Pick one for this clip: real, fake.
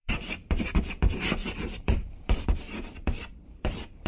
fake